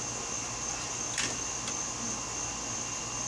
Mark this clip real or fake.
real